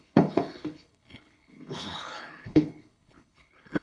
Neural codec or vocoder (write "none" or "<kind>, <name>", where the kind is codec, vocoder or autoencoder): codec, HILCodec